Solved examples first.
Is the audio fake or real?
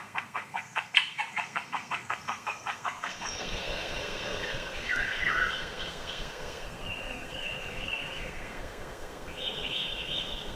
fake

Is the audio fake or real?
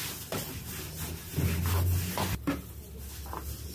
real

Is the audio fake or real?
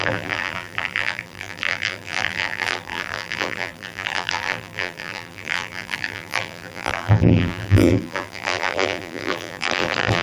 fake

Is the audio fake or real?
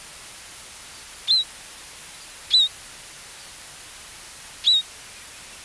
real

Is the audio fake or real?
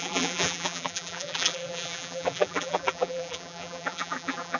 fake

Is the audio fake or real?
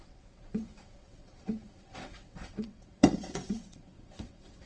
fake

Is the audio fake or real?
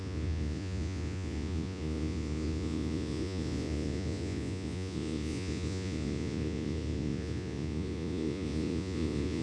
fake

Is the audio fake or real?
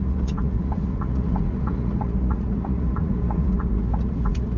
fake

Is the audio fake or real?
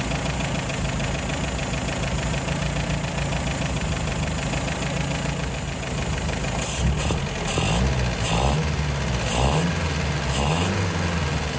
real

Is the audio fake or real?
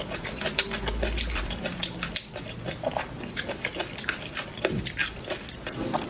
real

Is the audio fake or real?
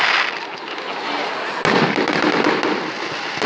real